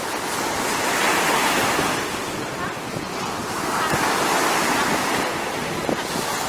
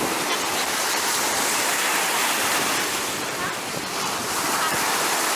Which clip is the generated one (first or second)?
second